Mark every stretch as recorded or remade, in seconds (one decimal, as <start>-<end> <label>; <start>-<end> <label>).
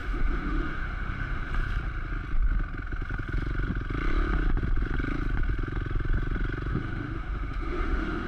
0.0-1.5 remade; 1.5-6.7 recorded; 6.7-8.3 remade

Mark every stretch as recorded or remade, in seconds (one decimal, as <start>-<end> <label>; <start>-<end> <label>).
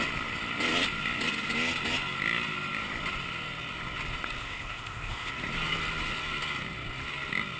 0.0-4.4 recorded; 4.4-5.3 remade; 5.3-7.6 recorded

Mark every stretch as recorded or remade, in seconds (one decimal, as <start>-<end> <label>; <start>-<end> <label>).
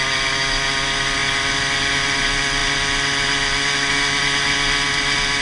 0.0-5.4 recorded